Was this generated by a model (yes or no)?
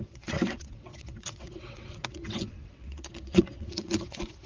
yes